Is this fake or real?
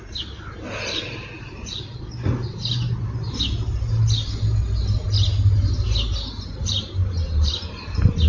real